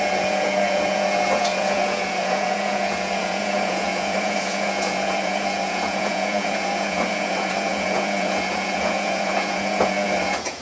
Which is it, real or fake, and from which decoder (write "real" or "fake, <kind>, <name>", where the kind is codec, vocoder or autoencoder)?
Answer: fake, vocoder, Vocos